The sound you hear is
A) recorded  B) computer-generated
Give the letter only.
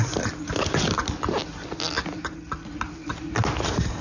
A